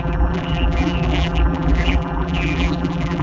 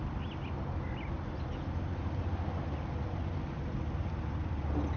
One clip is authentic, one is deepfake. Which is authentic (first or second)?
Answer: second